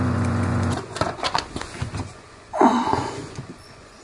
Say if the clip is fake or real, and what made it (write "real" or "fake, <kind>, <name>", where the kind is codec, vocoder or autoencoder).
fake, vocoder, Vocos